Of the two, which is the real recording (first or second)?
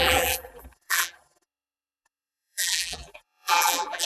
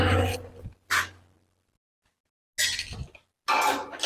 second